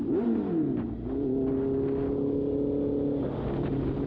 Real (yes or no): yes